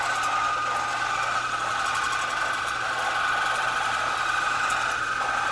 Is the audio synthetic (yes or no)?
no